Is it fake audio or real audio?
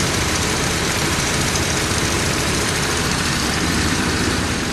fake